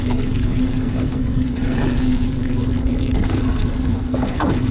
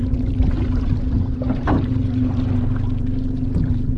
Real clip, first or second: second